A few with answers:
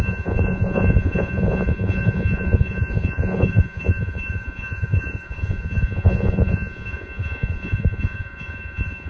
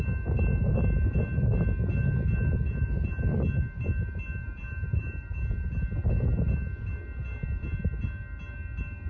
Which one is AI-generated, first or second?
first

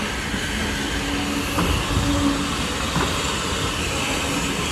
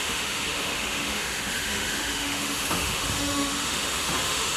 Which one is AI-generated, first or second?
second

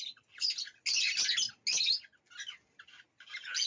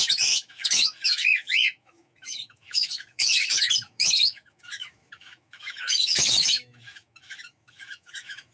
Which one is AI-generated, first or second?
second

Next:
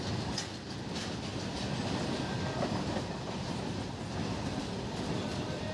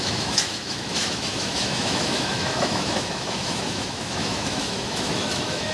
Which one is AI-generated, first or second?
second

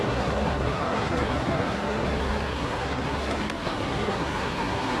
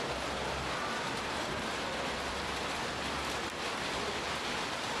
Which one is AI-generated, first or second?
first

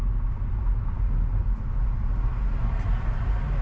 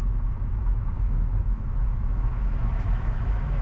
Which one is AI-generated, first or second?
second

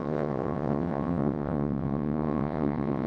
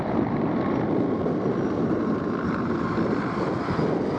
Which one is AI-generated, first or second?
first